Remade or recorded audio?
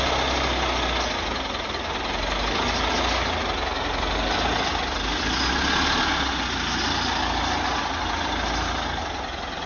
recorded